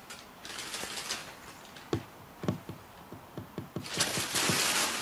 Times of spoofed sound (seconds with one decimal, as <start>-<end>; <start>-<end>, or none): 0.0-0.6